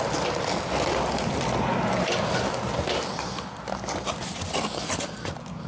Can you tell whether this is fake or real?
real